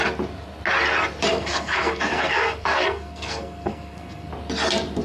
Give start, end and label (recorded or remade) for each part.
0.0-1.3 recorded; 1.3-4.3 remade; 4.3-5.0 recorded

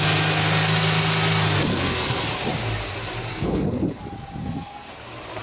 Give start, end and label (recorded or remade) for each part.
0.0-1.7 recorded; 1.7-2.3 remade; 2.3-3.3 recorded; 3.3-4.0 remade; 4.0-4.4 recorded; 4.4-4.9 remade; 4.9-5.4 recorded

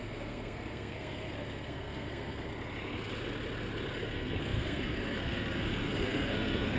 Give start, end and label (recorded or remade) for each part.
0.0-2.5 remade; 2.5-4.1 recorded; 4.1-6.8 remade

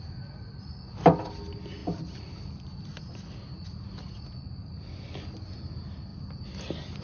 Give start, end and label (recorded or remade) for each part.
0.0-1.8 recorded; 1.8-3.0 remade; 3.0-6.1 recorded; 6.1-6.6 remade; 6.6-7.0 recorded